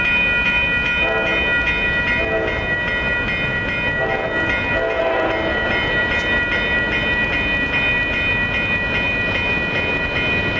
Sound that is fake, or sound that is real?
real